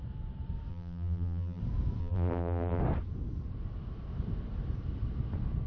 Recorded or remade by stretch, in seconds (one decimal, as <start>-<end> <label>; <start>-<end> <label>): 0.0-0.7 recorded; 0.7-1.6 remade; 1.6-2.0 recorded; 2.0-2.8 remade; 2.8-5.7 recorded